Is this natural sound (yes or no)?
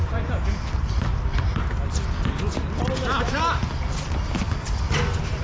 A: yes